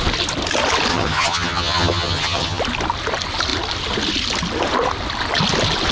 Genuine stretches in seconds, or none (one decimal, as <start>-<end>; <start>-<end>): 0.0-0.9; 2.6-5.9